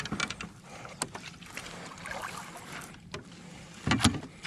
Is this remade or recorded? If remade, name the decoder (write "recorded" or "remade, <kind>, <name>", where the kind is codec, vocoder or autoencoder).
recorded